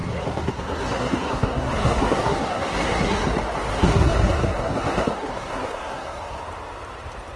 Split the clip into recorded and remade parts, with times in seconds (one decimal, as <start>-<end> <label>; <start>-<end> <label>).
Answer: 0.0-3.2 remade; 3.2-3.7 recorded; 3.7-6.4 remade; 6.4-7.4 recorded